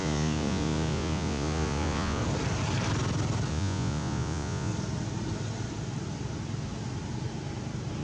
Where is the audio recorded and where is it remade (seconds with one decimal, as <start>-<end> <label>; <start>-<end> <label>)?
0.0-2.2 remade; 2.2-3.5 recorded; 3.5-4.7 remade; 4.7-8.0 recorded

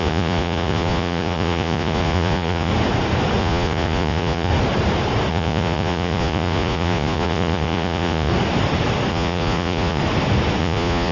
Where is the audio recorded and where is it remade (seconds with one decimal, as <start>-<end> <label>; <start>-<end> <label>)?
0.0-2.7 remade; 2.7-3.4 recorded; 3.4-4.5 remade; 4.5-5.3 recorded; 5.3-8.3 remade; 8.3-9.1 recorded; 9.1-10.0 remade; 10.0-10.6 recorded; 10.6-11.1 remade

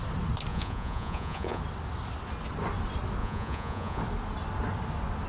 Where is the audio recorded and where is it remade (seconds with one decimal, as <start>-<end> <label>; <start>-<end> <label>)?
0.0-0.5 recorded; 0.5-1.6 remade; 1.6-3.2 recorded; 3.2-4.0 remade; 4.0-5.3 recorded